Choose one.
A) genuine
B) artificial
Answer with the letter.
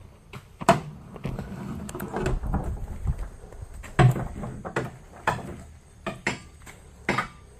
A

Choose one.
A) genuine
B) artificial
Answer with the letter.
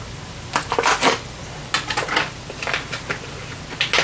A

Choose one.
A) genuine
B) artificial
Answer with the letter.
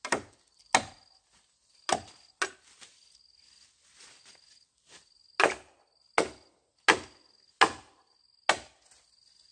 A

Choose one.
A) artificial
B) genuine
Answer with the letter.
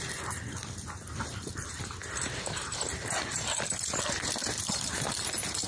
B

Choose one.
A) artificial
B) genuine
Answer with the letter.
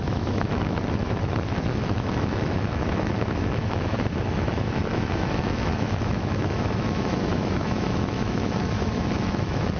A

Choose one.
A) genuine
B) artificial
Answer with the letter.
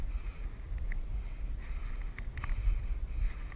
A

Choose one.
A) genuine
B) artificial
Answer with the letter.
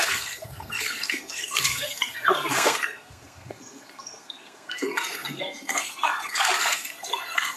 B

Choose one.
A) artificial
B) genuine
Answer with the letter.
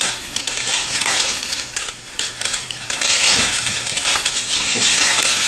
A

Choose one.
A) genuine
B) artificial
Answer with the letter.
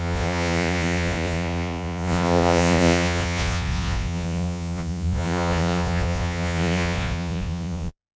B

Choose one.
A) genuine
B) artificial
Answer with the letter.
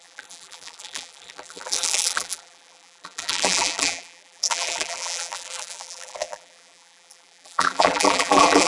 B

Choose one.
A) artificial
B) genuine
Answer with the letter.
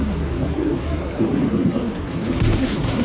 A